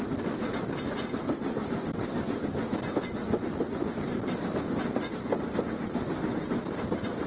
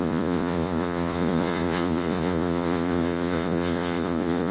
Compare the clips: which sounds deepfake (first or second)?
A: second